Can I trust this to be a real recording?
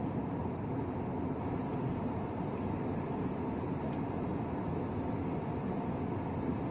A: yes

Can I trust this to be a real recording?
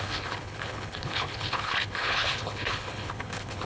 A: no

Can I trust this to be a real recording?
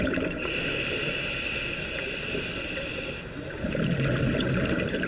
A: yes